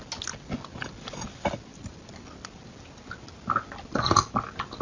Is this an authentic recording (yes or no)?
yes